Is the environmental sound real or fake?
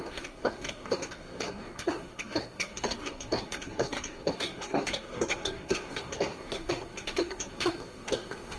fake